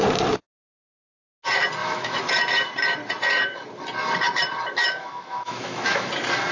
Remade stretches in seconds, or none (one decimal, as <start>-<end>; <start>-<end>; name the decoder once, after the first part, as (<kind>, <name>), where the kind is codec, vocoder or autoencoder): 1.8-2.3 (autoencoder, DAC-VAE); 4.8-6.1